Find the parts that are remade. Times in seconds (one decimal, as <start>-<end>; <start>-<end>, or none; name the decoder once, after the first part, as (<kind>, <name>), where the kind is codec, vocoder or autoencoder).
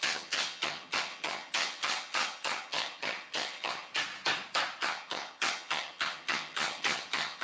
0.0-3.9 (vocoder, HiFi-GAN); 4.8-7.4